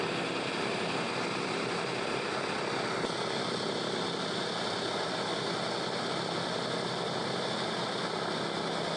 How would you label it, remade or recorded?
recorded